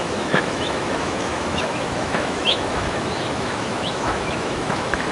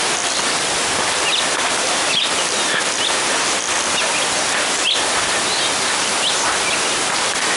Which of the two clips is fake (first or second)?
first